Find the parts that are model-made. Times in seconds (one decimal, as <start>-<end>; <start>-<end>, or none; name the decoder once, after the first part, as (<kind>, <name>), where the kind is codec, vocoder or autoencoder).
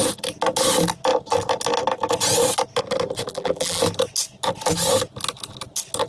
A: 3.3-3.8 (vocoder, BigVGAN v2)